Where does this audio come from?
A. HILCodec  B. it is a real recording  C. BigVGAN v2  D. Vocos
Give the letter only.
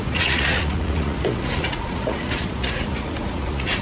D